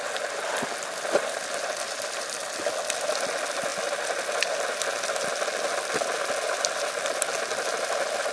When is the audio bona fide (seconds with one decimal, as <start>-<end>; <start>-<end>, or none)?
0.0-8.3